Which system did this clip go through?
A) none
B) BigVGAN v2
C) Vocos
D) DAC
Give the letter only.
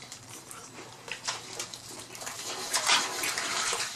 B